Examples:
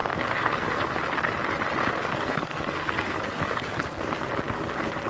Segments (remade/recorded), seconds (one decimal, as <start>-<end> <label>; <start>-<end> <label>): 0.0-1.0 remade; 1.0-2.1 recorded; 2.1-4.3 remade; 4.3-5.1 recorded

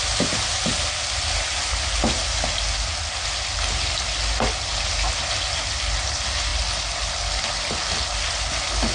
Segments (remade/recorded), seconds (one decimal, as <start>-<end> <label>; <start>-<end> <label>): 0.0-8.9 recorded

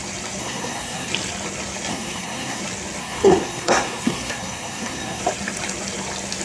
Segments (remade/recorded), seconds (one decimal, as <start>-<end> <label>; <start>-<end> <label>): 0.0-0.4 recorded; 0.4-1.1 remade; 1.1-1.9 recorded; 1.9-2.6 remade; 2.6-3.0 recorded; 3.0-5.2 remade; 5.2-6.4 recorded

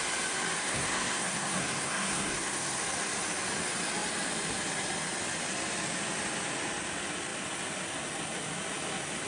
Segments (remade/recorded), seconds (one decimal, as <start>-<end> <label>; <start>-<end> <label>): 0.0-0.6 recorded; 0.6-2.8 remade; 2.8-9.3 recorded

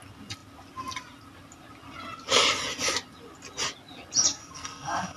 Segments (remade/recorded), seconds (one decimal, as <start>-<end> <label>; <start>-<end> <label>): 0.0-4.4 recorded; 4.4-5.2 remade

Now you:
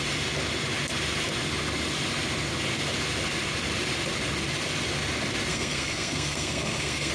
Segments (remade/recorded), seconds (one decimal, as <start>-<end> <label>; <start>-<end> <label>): 0.0-5.5 recorded; 5.5-7.1 remade